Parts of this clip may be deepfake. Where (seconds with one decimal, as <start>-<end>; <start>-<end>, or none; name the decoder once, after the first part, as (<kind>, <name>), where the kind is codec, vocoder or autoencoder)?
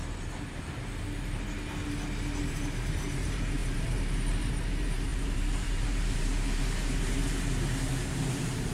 2.5-7.2 (vocoder, BigVGAN v2); 7.9-8.7